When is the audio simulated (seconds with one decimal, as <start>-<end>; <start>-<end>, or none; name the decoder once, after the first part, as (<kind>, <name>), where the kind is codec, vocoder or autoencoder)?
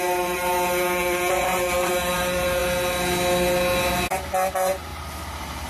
0.0-2.6 (vocoder, BigVGAN v2); 4.5-5.7